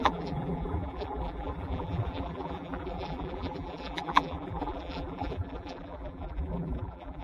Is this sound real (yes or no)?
no